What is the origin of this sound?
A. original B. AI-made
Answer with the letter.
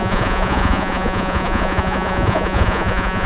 B